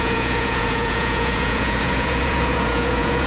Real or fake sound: fake